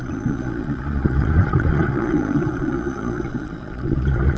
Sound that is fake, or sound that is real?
fake